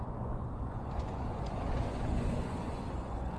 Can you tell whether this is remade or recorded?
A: remade